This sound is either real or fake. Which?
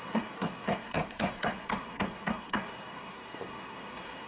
fake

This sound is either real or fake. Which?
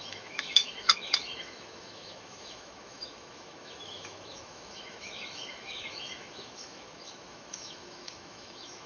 fake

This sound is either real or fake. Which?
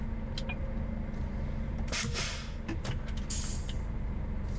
real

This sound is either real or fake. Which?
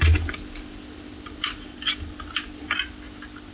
real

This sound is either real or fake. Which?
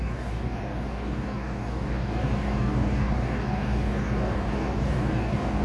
fake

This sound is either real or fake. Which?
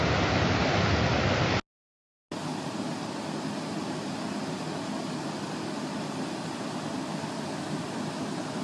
real